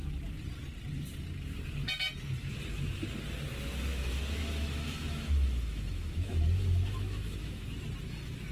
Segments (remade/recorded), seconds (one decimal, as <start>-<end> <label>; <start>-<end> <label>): 0.0-3.9 recorded; 3.9-7.6 remade; 7.6-8.5 recorded